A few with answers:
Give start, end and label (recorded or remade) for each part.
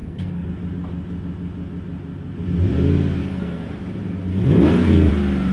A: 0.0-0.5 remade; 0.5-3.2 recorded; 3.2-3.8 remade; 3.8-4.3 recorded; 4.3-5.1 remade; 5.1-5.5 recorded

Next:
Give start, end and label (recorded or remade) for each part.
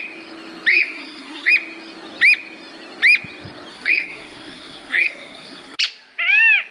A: 0.0-0.7 recorded; 0.7-1.5 remade; 1.5-3.7 recorded; 3.7-5.8 remade; 5.8-6.7 recorded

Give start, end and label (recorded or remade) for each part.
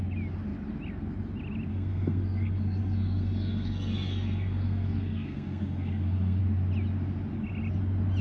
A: 0.0-1.7 recorded; 1.7-6.4 remade; 6.4-8.2 recorded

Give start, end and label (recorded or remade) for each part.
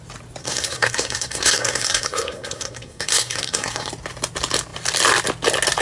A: 0.0-0.4 recorded; 0.4-3.9 remade; 3.9-5.8 recorded